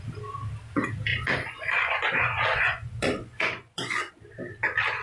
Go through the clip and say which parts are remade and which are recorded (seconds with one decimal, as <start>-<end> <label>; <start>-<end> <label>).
0.0-1.1 recorded; 1.1-4.1 remade; 4.1-5.0 recorded

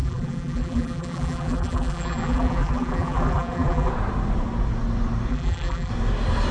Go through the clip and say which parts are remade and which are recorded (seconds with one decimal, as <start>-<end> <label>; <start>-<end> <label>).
0.0-3.9 remade; 3.9-5.3 recorded; 5.3-5.9 remade; 5.9-6.5 recorded

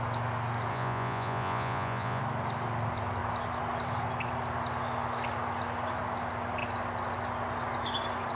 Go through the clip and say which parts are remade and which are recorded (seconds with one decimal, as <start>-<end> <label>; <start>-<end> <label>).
0.0-0.7 recorded; 0.7-2.2 remade; 2.2-8.3 recorded

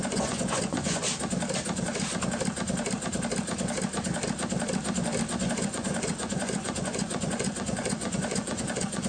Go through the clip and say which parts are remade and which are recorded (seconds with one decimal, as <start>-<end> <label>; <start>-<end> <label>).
0.0-1.0 remade; 1.0-5.5 recorded; 5.5-9.1 remade

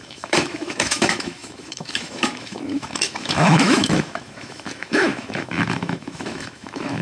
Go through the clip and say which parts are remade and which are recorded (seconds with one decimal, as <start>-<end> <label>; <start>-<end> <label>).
0.0-7.0 remade

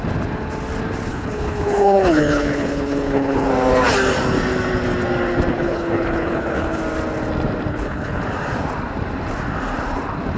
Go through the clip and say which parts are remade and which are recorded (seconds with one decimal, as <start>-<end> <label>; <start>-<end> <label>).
0.0-1.1 recorded; 1.1-3.5 remade; 3.5-5.5 recorded; 5.5-6.8 remade; 6.8-7.7 recorded; 7.7-8.2 remade; 8.2-10.4 recorded

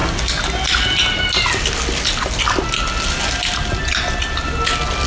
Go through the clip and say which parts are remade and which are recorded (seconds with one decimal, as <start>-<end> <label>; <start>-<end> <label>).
0.0-5.1 recorded

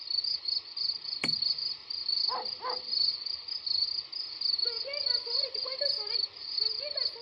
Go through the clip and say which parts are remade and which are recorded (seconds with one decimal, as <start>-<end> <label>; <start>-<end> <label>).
0.0-7.2 recorded